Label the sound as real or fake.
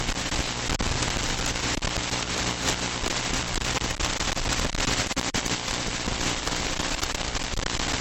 real